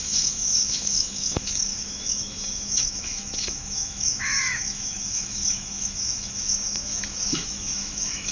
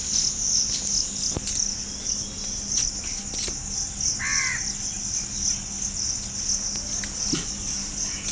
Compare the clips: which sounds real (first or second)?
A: second